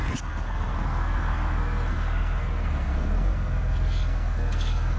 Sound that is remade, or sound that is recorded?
remade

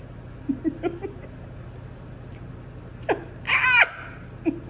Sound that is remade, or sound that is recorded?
recorded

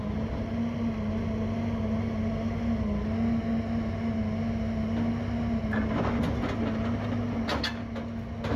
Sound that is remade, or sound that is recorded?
recorded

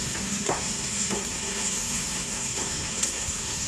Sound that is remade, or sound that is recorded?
remade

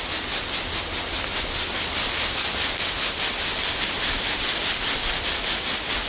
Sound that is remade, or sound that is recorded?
recorded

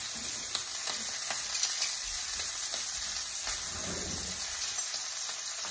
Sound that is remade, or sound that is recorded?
recorded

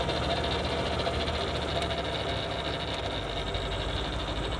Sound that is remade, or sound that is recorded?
recorded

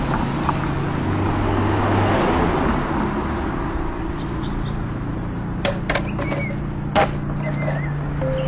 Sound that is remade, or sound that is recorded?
recorded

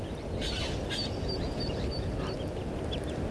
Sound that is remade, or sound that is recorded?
recorded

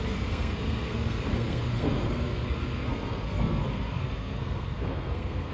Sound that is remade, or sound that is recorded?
remade